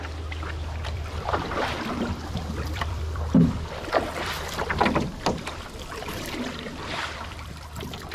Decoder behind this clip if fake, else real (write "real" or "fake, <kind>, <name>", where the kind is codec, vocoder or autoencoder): fake, vocoder, BigVGAN v2